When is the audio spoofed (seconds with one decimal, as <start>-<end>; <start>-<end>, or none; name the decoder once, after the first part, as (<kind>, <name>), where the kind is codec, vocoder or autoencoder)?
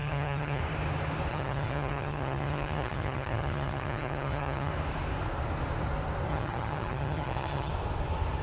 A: 0.0-0.6 (vocoder, HiFi-GAN); 1.3-4.7; 6.3-7.7